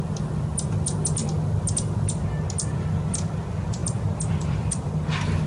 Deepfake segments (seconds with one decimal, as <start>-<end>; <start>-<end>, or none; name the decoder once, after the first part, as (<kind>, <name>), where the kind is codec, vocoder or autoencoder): 3.8-4.9 (vocoder, BigVGAN v2)